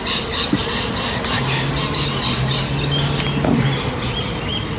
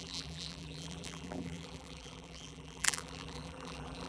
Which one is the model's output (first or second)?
second